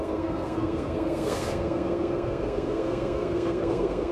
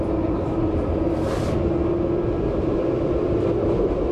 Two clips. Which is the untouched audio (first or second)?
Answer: second